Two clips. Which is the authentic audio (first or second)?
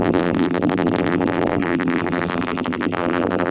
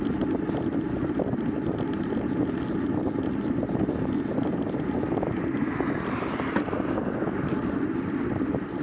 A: second